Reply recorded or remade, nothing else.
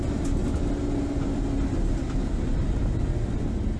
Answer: recorded